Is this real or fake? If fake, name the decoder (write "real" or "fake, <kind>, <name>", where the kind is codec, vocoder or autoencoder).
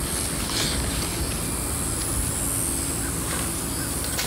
real